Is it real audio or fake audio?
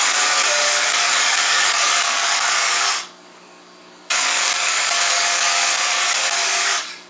fake